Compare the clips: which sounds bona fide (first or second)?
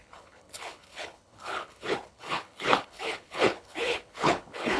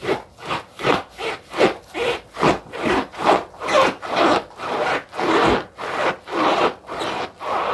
second